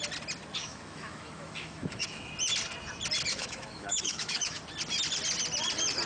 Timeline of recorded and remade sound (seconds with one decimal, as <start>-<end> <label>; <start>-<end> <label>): 0.0-0.6 recorded; 0.6-2.3 remade; 2.3-3.3 recorded; 3.3-4.6 remade; 4.6-6.1 recorded

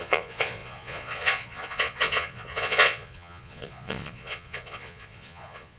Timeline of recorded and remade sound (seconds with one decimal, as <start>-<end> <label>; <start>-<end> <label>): 0.0-5.8 remade

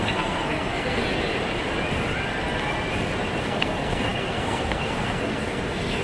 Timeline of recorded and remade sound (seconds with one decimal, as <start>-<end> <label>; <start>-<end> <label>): 0.0-1.0 remade; 1.0-3.4 recorded; 3.4-6.0 remade

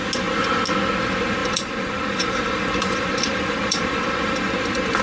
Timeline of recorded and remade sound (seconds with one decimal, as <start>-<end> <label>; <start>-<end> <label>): 0.0-1.4 recorded; 1.4-4.4 remade; 4.4-5.0 recorded

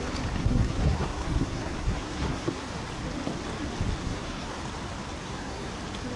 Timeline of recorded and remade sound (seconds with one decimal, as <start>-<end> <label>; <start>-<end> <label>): 0.0-0.4 recorded; 0.4-2.7 remade; 2.7-4.0 recorded; 4.0-4.6 remade; 4.6-5.2 recorded; 5.2-5.7 remade; 5.7-6.2 recorded

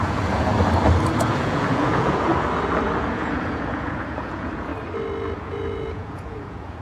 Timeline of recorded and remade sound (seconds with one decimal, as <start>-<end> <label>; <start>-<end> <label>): 0.0-0.5 remade; 0.5-1.2 recorded; 1.2-2.3 remade; 2.3-3.0 recorded; 3.0-4.7 remade; 4.7-5.4 recorded; 5.4-6.8 remade

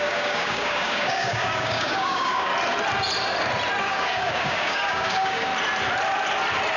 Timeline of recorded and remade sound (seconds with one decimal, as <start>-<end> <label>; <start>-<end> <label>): 0.0-2.5 remade; 2.5-3.8 recorded; 3.8-5.5 remade; 5.5-6.8 recorded

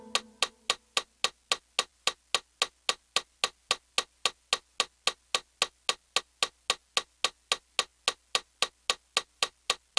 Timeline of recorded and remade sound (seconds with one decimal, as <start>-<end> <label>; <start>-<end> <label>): 0.0-10.0 recorded